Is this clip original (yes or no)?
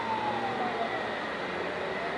yes